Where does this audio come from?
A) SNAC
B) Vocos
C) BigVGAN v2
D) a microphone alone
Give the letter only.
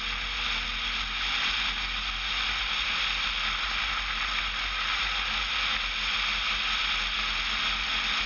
D